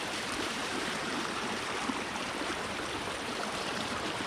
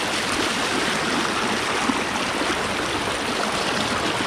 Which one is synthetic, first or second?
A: first